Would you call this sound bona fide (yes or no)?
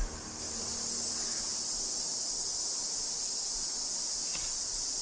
yes